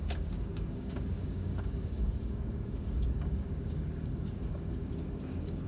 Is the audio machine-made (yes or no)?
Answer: yes